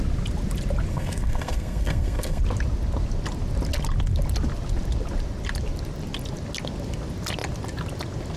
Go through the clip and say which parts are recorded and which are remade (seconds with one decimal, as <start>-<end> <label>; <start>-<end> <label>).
0.0-0.9 recorded; 0.9-2.4 remade; 2.4-8.4 recorded